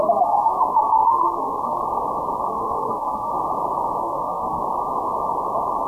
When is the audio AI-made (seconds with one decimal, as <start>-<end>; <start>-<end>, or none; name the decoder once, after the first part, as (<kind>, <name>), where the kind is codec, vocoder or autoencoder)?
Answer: 0.0-1.8 (codec, SNAC); 2.5-3.3; 4.0-4.6